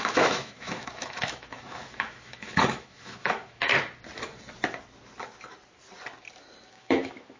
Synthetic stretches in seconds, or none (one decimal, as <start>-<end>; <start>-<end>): 0.0-3.7; 6.7-7.4